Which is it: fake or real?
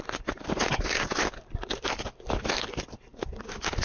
real